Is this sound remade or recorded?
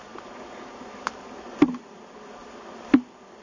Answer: recorded